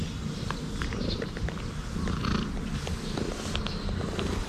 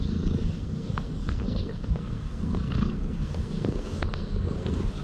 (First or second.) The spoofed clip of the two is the second